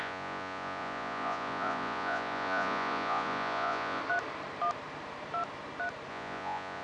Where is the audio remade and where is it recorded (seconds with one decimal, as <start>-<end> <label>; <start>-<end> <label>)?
0.0-4.0 remade; 4.0-6.1 recorded; 6.1-6.8 remade